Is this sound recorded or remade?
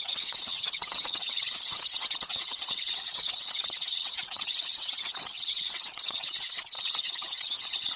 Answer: remade